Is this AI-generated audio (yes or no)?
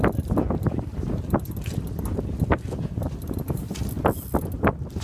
no